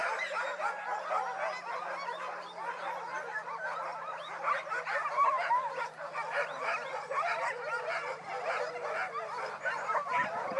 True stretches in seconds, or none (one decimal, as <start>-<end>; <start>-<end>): 0.0-10.6